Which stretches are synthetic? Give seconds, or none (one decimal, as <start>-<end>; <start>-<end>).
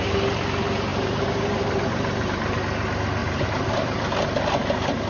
0.9-2.6; 3.2-3.7